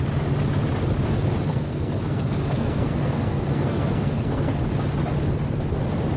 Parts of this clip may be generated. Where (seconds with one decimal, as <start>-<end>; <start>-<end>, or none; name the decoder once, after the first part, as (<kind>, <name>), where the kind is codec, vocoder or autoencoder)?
1.5-4.6 (codec, SNAC)